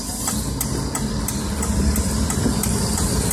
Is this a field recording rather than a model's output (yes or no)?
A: yes